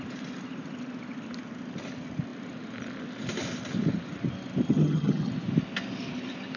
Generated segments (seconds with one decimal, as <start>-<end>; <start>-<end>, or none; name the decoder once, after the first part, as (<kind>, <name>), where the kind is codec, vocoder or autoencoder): 4.7-5.3 (vocoder, HiFi-GAN)